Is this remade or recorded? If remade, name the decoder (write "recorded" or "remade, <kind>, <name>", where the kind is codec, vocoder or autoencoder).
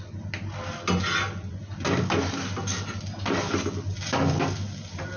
recorded